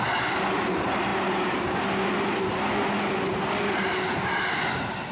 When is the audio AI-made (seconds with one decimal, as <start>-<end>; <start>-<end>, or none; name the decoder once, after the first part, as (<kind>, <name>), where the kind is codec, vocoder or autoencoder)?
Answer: none